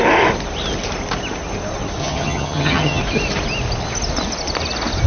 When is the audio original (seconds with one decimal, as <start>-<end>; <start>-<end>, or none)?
0.0-2.0; 3.0-5.1

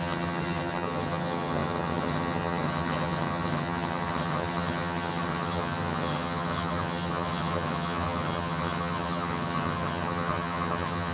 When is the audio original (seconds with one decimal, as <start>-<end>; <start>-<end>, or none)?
none

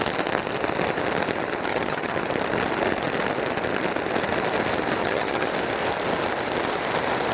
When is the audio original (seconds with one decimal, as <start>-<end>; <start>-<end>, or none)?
0.0-1.7; 2.2-5.0; 5.5-7.3

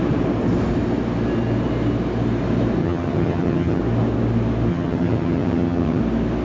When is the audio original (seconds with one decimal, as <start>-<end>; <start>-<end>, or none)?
0.0-2.8; 3.8-4.7; 6.0-6.4

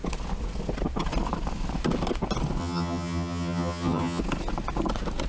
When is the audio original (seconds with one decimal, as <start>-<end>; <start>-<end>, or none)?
0.0-2.6; 4.2-5.3

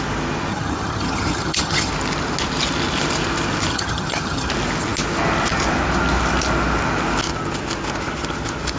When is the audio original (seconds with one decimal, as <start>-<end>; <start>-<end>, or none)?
0.0-0.5; 1.9-3.7; 4.5-8.8